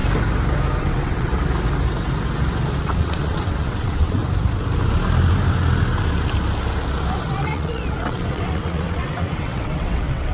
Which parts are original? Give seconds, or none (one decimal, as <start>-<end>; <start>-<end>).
0.0-0.8; 1.3-2.8; 4.2-7.2